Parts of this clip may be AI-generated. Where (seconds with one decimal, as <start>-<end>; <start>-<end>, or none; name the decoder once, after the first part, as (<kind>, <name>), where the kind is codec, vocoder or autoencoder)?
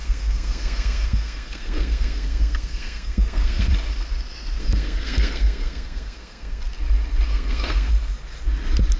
0.0-3.7 (codec, SNAC); 4.6-6.6; 7.3-7.9